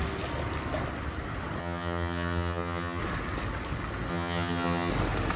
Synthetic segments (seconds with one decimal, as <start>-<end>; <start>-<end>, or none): 1.6-3.0; 4.1-4.9